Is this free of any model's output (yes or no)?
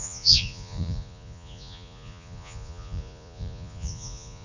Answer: no